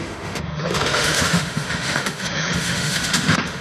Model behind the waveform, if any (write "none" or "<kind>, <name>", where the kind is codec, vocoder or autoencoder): autoencoder, DAC-VAE